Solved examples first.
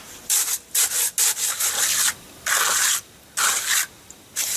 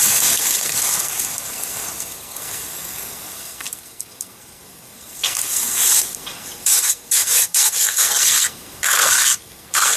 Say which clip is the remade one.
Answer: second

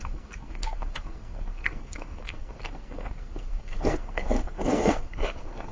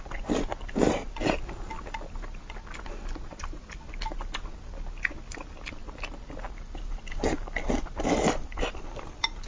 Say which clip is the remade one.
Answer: first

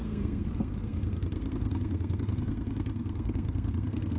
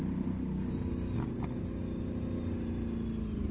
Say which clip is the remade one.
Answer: first